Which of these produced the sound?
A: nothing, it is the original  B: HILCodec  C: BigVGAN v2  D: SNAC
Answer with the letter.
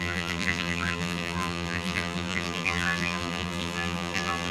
C